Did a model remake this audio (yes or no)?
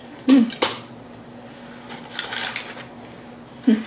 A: no